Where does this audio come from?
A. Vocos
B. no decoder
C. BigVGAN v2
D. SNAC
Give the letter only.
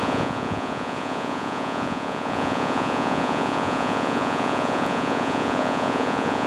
A